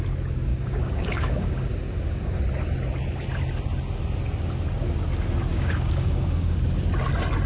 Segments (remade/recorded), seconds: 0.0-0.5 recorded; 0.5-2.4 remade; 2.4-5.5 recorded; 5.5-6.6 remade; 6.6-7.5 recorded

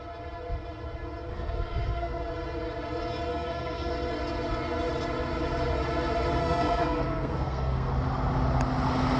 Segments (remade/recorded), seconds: 0.0-1.3 recorded; 1.3-2.2 remade; 2.2-3.3 recorded; 3.3-3.9 remade; 3.9-6.4 recorded; 6.4-7.9 remade; 7.9-9.2 recorded

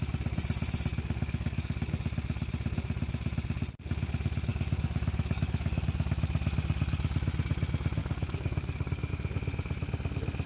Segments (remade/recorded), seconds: 0.0-0.9 recorded; 0.9-1.9 remade; 1.9-4.5 recorded; 4.5-5.8 remade; 5.8-8.0 recorded; 8.0-9.1 remade; 9.1-10.5 recorded

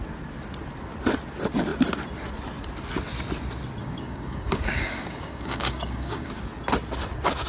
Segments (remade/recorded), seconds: 0.0-3.8 recorded; 3.8-6.3 remade; 6.3-7.5 recorded

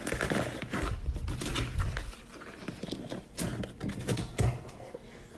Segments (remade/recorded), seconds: 0.0-3.9 recorded; 3.9-5.4 remade

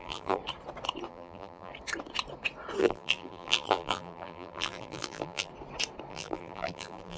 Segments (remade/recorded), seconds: 0.0-0.4 remade; 0.4-1.1 recorded; 1.1-1.7 remade; 1.7-2.8 recorded; 2.8-5.5 remade; 5.5-6.1 recorded; 6.1-7.2 remade

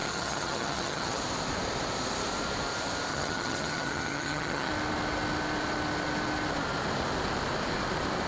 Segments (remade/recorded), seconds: 0.0-1.2 remade; 1.2-3.1 recorded; 3.1-4.7 remade; 4.7-8.3 recorded

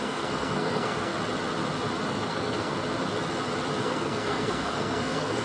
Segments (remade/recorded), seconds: 0.0-1.1 remade; 1.1-2.1 recorded; 2.1-2.8 remade; 2.8-3.8 recorded; 3.8-5.4 remade